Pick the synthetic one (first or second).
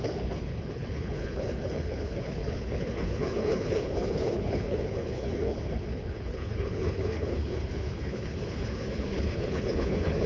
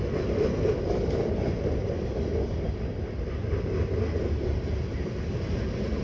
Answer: first